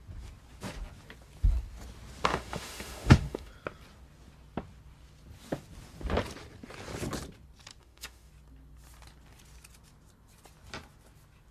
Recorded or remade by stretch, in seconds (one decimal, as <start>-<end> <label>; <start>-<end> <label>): 0.0-2.3 recorded; 2.3-3.5 remade; 3.5-7.8 recorded; 7.8-8.3 remade; 8.3-11.5 recorded